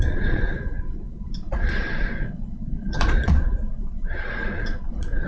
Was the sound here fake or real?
fake